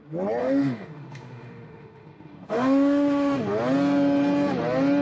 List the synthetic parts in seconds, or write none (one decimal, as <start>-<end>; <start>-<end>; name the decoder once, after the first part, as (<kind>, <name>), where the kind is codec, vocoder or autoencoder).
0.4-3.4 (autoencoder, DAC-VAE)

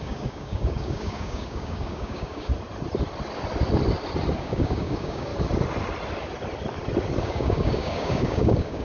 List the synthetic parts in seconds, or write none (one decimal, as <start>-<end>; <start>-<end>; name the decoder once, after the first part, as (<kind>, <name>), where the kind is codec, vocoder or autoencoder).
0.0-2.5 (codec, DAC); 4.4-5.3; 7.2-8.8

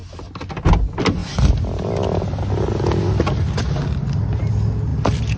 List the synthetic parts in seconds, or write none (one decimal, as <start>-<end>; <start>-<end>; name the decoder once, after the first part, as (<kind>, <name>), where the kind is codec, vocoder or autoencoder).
none

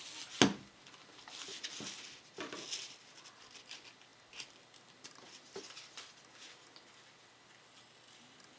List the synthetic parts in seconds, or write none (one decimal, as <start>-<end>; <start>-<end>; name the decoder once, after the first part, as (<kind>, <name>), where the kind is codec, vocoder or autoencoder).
none

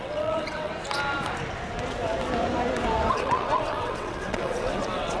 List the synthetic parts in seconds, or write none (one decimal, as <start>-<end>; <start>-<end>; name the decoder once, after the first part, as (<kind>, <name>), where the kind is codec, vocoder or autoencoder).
0.0-0.7 (vocoder, WaveNeXt); 3.1-5.2

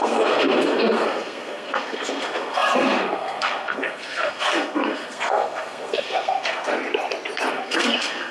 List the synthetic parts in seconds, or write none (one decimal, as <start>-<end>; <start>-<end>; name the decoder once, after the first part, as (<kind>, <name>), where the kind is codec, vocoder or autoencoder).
0.0-6.7 (codec, SNAC); 7.5-8.3